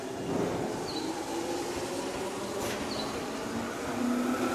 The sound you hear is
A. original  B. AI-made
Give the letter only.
A